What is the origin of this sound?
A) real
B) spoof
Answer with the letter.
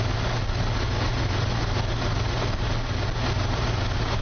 A